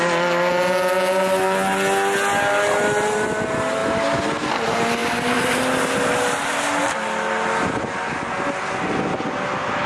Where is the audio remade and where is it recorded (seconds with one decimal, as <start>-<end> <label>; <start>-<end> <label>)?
0.0-9.9 recorded